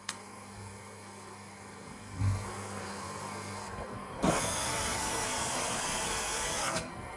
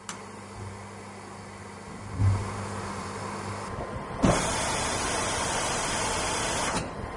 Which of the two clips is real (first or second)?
second